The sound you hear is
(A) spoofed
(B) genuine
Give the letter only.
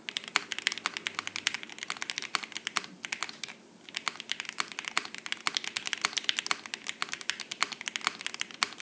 B